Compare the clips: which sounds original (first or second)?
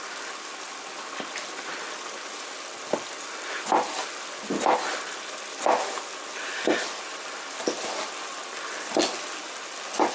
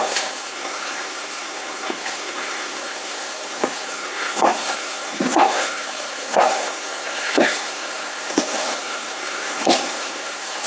first